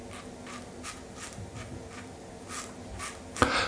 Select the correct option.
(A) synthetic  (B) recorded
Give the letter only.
B